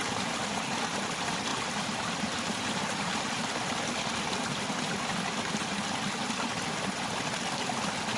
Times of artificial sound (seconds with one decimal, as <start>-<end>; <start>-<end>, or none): 1.5-3.5